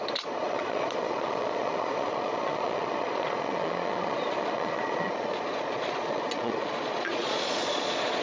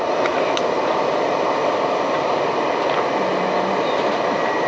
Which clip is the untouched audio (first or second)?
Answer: second